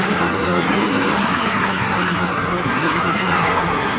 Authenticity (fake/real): fake